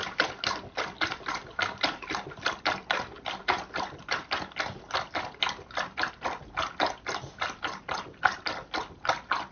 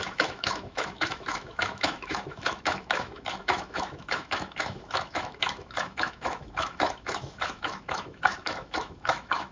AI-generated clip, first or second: second